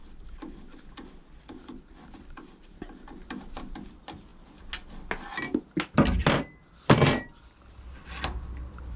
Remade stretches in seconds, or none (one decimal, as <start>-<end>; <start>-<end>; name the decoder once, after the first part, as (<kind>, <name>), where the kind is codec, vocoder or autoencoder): none